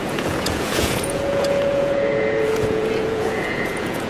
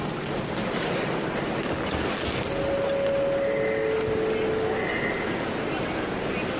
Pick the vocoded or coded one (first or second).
first